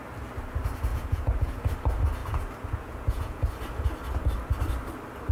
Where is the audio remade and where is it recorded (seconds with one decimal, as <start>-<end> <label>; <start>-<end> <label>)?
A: 0.0-0.9 recorded; 0.9-1.6 remade; 1.6-2.2 recorded; 2.2-3.5 remade; 3.5-5.3 recorded